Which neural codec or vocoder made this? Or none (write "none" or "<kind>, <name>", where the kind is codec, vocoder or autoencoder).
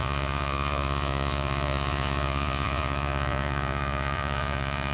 vocoder, Vocos